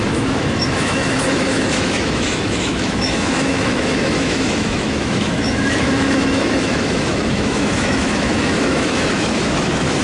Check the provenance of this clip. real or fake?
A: fake